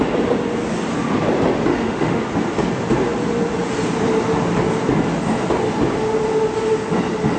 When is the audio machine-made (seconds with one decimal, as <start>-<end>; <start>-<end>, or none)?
1.7-2.2